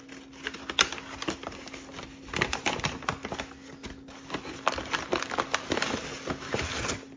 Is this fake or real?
real